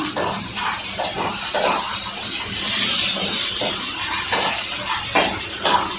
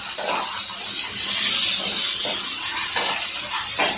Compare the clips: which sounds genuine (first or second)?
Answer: second